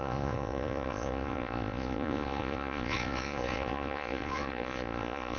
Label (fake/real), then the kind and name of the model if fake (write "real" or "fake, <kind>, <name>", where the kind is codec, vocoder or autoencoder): fake, vocoder, Vocos